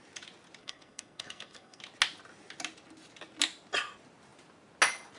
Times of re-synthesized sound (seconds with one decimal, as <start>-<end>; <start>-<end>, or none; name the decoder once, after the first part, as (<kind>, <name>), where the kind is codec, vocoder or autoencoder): 0.6-1.8 (codec, SNAC)